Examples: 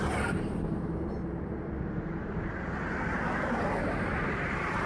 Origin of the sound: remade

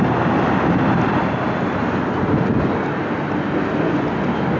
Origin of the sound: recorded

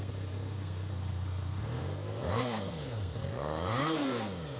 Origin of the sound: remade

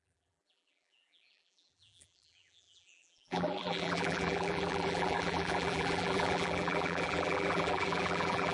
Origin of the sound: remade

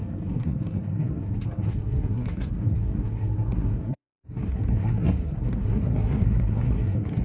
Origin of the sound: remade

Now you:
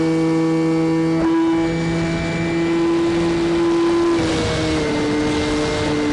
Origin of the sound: recorded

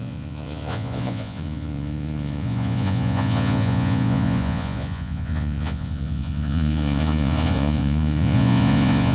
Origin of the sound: remade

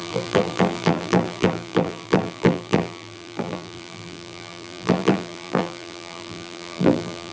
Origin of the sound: remade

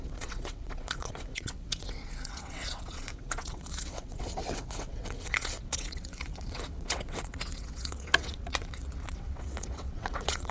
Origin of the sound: remade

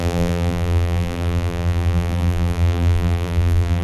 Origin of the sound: remade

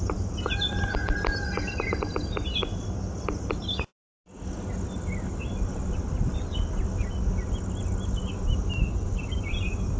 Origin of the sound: recorded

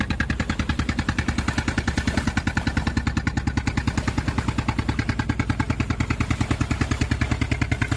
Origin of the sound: recorded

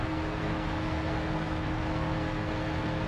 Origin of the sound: remade